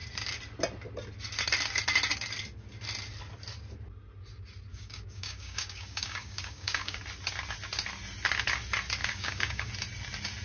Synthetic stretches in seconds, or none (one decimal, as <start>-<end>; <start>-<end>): 4.7-7.0; 9.0-9.7